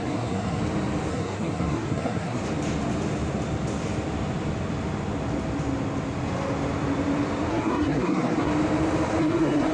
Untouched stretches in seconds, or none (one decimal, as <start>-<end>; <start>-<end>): 0.6-1.1; 2.4-7.5; 8.5-9.2

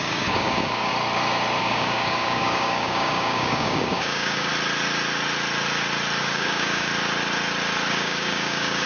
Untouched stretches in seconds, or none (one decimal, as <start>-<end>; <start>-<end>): 0.9-1.6; 4.5-6.2; 6.9-7.9

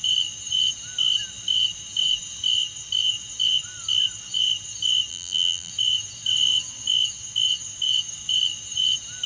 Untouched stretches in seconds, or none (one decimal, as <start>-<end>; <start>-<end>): 0.0-5.1; 5.7-9.3

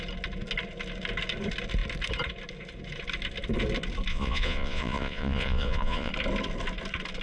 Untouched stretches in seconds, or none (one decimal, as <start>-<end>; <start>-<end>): 0.0-4.1; 6.1-7.2

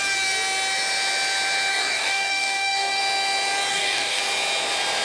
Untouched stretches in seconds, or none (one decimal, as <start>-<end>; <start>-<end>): 0.0-1.7; 3.0-3.7; 4.2-5.0

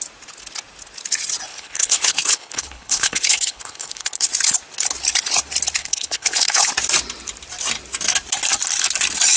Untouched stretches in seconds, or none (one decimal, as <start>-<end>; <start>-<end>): 0.0-1.5; 4.3-5.8; 6.7-9.4

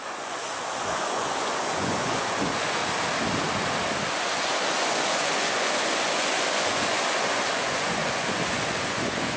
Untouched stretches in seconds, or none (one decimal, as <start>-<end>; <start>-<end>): 2.8-4.1